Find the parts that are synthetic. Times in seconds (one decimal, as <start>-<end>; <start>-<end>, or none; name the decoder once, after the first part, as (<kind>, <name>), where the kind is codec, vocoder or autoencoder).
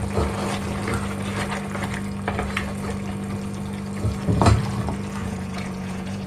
5.2-6.3 (vocoder, Vocos)